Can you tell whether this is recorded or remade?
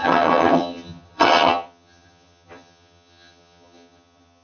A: remade